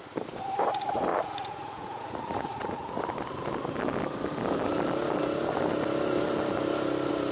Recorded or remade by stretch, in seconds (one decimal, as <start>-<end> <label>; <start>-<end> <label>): 0.0-1.1 recorded; 1.1-3.0 remade; 3.0-7.3 recorded